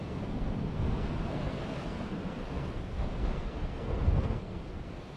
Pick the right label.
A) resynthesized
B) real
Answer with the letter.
A